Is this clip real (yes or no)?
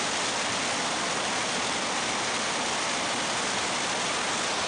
yes